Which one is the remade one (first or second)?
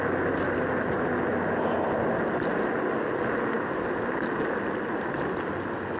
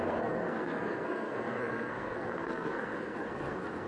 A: second